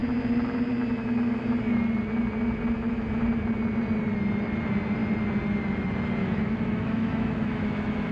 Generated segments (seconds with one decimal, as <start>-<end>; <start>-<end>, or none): 6.2-8.1